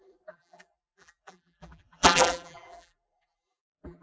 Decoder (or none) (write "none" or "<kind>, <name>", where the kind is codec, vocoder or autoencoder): vocoder, BigVGAN v2